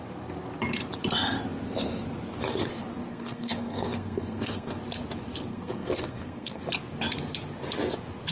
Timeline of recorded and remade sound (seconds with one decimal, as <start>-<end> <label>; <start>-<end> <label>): 0.0-3.1 recorded; 3.1-4.8 remade; 4.8-5.5 recorded; 5.5-6.6 remade; 6.6-8.3 recorded